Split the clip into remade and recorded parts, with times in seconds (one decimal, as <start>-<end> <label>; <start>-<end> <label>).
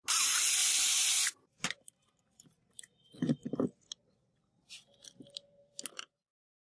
0.0-0.6 recorded; 0.6-3.2 remade; 3.2-6.6 recorded